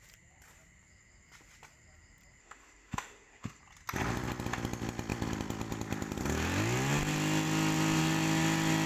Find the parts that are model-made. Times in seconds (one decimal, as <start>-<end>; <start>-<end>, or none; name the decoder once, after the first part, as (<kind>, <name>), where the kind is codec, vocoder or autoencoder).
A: 2.4-3.6 (autoencoder, DAC-VAE)